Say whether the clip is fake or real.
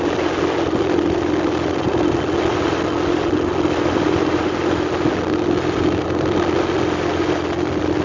real